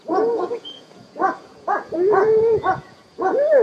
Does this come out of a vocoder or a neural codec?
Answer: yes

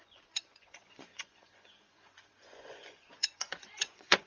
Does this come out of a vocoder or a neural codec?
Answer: yes